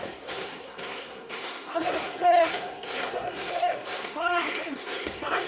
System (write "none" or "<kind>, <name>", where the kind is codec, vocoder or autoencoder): codec, SNAC